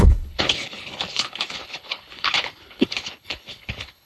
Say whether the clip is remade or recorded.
remade